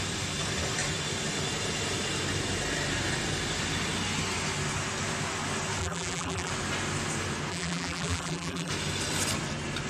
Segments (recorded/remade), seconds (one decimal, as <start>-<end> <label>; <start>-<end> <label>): 0.0-5.8 recorded; 5.8-6.5 remade; 6.5-7.5 recorded; 7.5-8.7 remade; 8.7-9.9 recorded